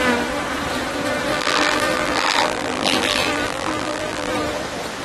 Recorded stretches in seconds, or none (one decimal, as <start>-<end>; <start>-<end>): 0.0-1.3; 4.3-5.0